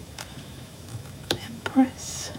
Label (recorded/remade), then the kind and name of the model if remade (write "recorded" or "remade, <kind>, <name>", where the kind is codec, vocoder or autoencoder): remade, autoencoder, DAC-VAE